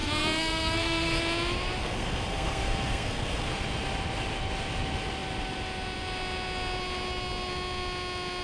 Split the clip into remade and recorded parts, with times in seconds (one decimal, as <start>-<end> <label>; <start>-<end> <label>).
0.0-1.2 remade; 1.2-1.8 recorded; 1.8-3.5 remade; 3.5-8.4 recorded